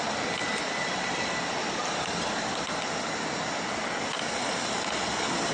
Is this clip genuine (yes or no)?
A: yes